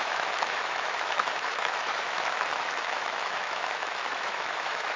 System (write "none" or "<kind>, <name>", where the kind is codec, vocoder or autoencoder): autoencoder, DAC-VAE